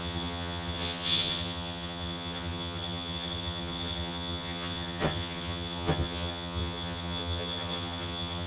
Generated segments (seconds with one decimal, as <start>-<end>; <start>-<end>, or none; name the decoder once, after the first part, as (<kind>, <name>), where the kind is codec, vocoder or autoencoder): 0.0-8.5 (vocoder, HiFi-GAN)